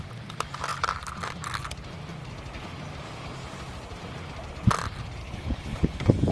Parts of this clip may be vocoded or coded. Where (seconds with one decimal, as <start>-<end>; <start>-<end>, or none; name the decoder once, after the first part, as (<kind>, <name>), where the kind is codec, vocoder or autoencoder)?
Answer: 5.2-6.3 (codec, HILCodec)